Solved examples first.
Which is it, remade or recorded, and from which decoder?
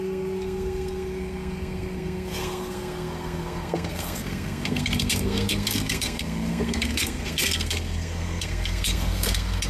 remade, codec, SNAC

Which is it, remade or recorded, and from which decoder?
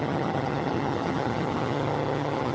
remade, vocoder, HiFi-GAN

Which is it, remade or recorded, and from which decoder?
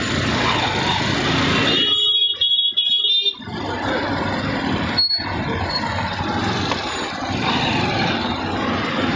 recorded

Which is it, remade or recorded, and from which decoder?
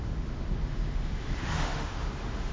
remade, autoencoder, DAC-VAE